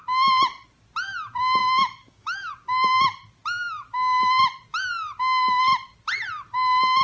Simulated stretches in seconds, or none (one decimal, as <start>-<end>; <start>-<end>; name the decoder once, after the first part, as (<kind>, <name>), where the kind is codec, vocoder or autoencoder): 1.6-2.5 (autoencoder, DAC-VAE)